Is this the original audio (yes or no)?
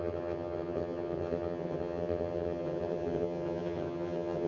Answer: no